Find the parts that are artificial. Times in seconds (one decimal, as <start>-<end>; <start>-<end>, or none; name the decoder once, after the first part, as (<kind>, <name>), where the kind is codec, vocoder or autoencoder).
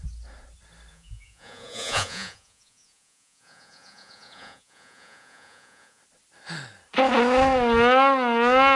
0.9-6.0 (vocoder, Vocos)